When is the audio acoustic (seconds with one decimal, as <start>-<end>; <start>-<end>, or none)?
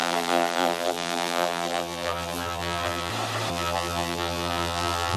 3.1-3.5